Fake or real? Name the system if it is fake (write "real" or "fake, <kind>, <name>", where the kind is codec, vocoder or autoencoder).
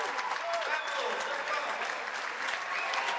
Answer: real